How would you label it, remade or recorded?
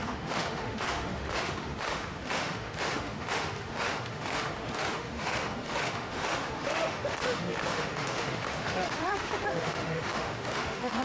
remade